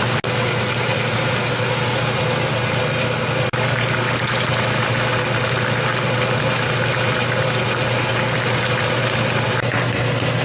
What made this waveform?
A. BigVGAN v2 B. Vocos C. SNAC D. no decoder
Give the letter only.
D